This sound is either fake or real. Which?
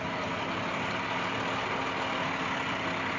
real